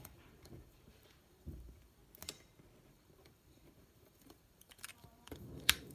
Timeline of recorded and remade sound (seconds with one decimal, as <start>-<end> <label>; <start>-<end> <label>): 0.0-2.0 remade; 2.0-2.9 recorded; 2.9-5.9 remade